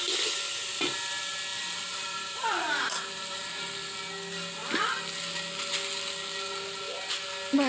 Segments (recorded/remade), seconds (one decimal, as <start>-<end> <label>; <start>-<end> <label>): 0.0-1.5 recorded; 1.5-3.7 remade; 3.7-7.7 recorded